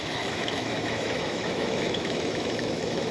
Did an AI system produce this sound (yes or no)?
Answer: yes